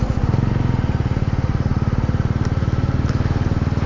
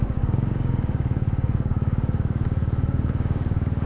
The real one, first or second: first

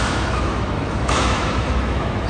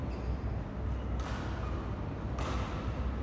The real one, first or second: second